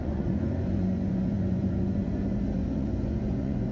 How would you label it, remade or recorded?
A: remade